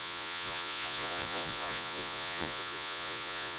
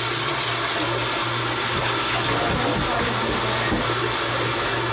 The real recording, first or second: second